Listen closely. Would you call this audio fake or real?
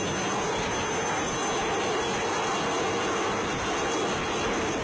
real